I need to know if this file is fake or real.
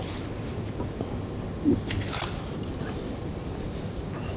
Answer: real